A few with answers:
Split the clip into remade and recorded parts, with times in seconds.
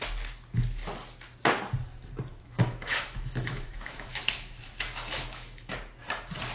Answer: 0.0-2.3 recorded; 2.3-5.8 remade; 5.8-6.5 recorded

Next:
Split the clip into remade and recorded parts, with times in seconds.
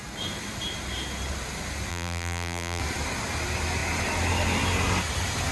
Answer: 0.0-1.9 recorded; 1.9-2.8 remade; 2.8-5.5 recorded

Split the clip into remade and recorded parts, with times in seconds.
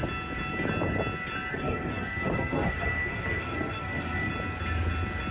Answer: 0.0-1.5 recorded; 1.5-4.3 remade; 4.3-5.3 recorded